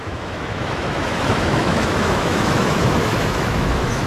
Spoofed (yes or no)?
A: yes